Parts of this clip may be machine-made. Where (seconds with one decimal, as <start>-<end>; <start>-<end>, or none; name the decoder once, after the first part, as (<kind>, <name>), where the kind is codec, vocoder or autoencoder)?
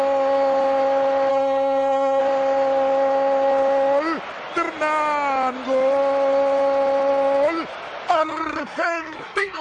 1.3-2.2 (codec, SNAC); 8.1-9.6